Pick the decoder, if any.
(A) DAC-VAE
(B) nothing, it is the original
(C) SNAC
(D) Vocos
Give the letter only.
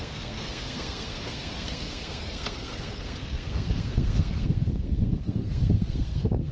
C